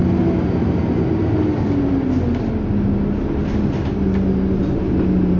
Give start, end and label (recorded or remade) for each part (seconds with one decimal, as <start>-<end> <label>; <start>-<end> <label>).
0.0-1.2 recorded; 1.2-5.4 remade